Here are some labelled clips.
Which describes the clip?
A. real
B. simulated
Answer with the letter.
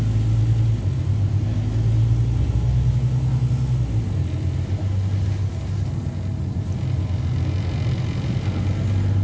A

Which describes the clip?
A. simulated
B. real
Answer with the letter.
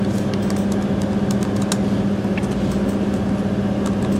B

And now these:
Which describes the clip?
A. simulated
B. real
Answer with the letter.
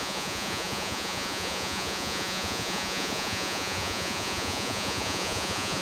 A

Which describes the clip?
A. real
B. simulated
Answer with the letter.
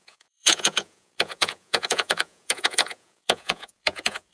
B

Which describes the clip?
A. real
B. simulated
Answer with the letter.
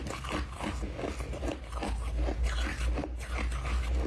A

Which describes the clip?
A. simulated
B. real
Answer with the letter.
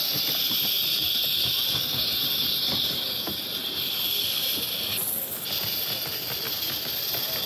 B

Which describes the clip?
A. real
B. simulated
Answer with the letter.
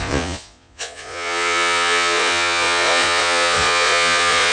B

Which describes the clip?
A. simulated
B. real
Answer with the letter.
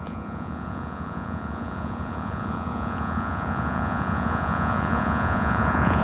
A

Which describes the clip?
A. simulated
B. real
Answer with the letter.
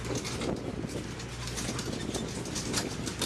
B